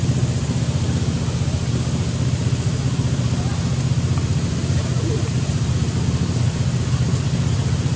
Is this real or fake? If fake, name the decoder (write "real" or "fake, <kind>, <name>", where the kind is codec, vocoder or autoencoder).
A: real